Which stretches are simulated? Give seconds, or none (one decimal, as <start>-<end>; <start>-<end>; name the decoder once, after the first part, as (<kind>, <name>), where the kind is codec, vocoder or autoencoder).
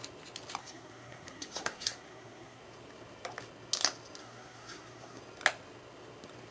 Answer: 0.6-2.6 (codec, SNAC); 4.2-5.2